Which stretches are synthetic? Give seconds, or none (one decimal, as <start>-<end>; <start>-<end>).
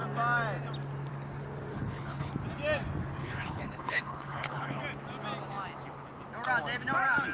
1.7-2.3; 3.2-4.8